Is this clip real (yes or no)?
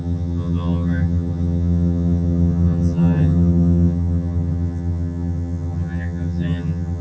no